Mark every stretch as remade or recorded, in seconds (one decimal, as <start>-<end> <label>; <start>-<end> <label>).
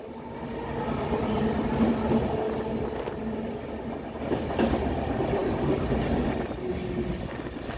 0.0-7.8 recorded